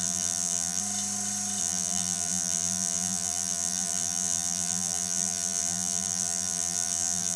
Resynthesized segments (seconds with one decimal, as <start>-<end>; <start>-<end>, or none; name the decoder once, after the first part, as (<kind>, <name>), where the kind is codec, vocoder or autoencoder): 0.0-0.8 (vocoder, BigVGAN v2); 1.6-7.4